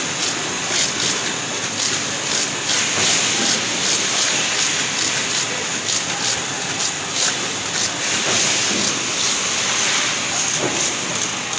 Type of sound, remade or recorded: recorded